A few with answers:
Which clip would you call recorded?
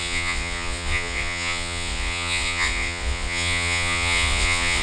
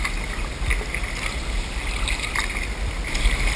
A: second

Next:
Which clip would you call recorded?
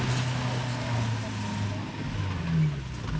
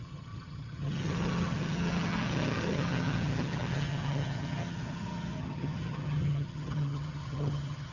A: first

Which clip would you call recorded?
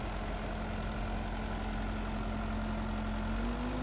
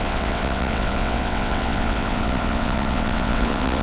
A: first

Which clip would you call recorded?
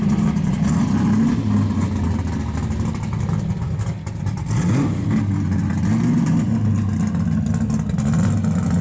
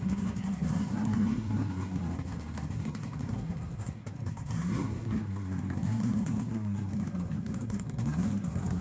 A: first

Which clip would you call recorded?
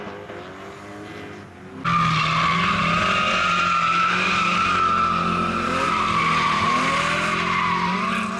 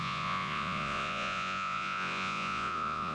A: first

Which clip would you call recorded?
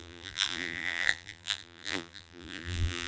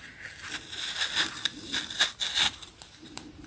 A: second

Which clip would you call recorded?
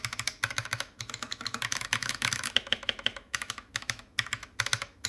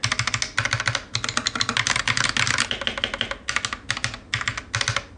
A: second